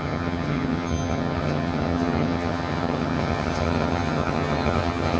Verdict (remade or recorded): remade